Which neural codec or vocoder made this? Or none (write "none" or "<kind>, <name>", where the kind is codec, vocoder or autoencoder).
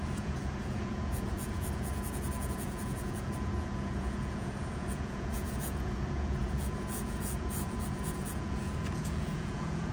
vocoder, Vocos